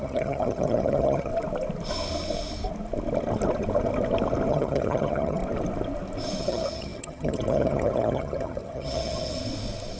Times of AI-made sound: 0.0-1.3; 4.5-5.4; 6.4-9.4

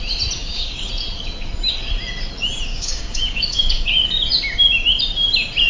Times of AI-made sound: 0.4-0.9; 2.7-3.9

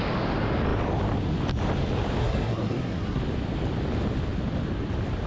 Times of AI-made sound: 2.2-3.2

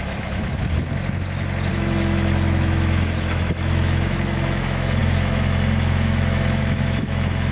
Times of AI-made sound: 0.0-0.6; 1.7-7.5

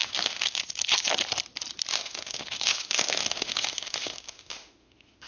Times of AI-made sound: 0.0-0.6; 1.9-5.3

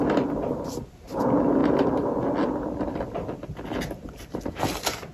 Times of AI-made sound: none

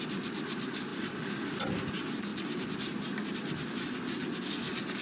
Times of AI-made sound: none